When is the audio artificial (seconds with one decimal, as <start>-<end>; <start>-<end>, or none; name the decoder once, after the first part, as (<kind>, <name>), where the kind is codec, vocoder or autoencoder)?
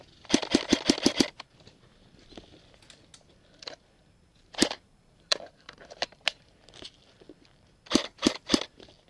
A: 4.3-6.6 (vocoder, BigVGAN v2); 8.0-8.6